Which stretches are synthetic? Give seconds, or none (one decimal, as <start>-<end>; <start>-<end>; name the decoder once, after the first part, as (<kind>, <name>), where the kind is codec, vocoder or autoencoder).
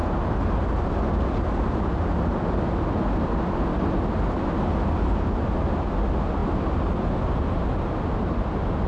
none